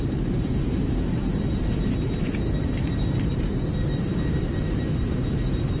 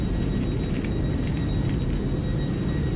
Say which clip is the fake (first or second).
first